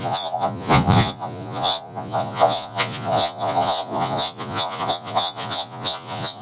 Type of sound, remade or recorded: remade